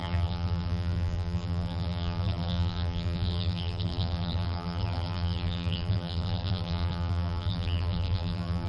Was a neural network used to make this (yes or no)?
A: yes